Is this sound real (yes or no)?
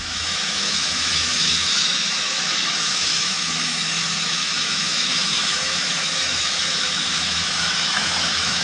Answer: no